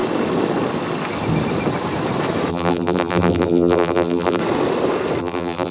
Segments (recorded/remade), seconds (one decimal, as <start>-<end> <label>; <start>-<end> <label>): 0.0-2.5 recorded; 2.5-4.4 remade; 4.4-5.2 recorded; 5.2-5.7 remade

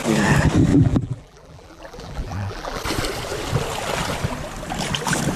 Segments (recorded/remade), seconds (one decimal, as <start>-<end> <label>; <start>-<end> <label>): 0.0-0.7 recorded; 0.7-2.8 remade; 2.8-5.4 recorded

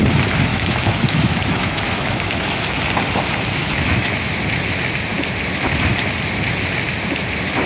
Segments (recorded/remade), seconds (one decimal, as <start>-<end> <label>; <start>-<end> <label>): 0.0-0.5 recorded; 0.5-2.8 remade; 2.8-3.6 recorded; 3.6-4.4 remade; 4.4-7.7 recorded

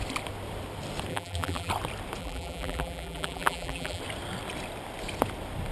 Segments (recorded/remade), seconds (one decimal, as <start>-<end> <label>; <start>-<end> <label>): 0.0-1.1 recorded; 1.1-1.7 remade; 1.7-2.2 recorded; 2.2-4.0 remade; 4.0-5.7 recorded

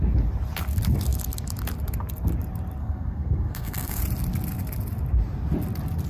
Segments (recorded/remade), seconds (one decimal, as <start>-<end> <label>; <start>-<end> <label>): 0.0-2.8 recorded; 2.8-4.0 remade; 4.0-6.1 recorded

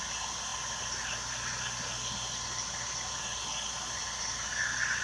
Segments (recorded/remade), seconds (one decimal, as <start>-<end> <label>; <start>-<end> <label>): 0.0-5.0 recorded